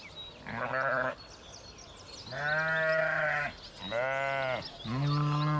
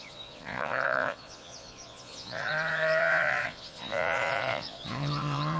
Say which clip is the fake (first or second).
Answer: second